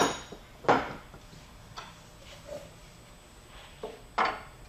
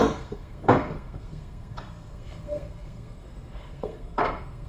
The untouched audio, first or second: first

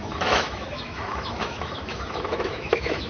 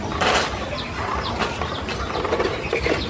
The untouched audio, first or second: second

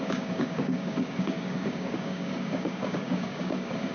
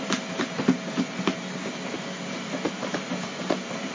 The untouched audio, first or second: second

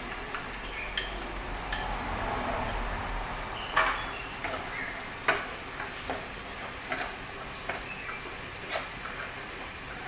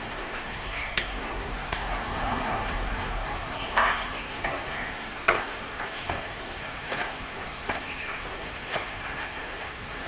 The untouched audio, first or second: first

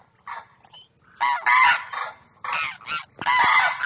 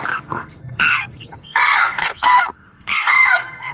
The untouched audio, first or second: first